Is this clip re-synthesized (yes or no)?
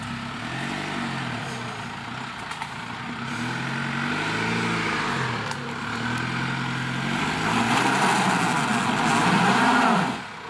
no